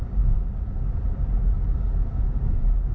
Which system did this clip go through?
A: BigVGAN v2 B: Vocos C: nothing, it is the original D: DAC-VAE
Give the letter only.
C